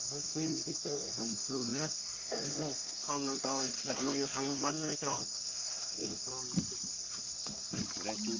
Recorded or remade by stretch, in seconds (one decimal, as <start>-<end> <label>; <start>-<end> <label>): 0.0-6.3 remade; 6.3-6.9 recorded; 6.9-7.8 remade; 7.8-8.4 recorded